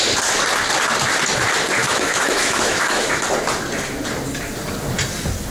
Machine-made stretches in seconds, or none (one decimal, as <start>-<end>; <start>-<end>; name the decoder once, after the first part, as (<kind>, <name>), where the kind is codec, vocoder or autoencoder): 1.8-3.2 (autoencoder, DAC-VAE)